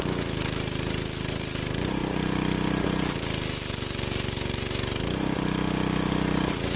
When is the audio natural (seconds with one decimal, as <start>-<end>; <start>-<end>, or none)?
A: 0.0-6.8